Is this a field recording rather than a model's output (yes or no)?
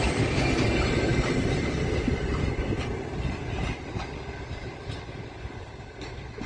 yes